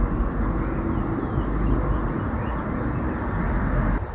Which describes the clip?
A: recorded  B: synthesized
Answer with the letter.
A